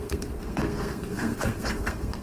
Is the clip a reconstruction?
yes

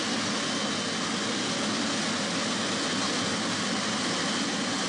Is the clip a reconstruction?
no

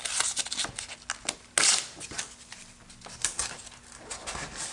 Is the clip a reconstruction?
no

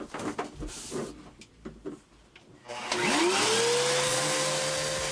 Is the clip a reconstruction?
no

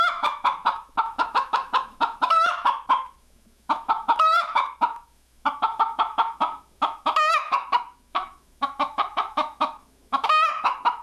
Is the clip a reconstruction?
yes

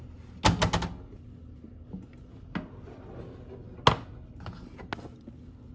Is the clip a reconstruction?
no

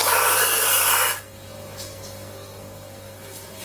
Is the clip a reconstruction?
yes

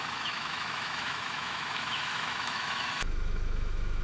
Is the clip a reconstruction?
yes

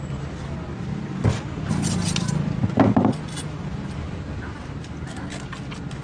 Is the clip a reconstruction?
no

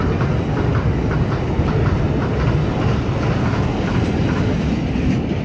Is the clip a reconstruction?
no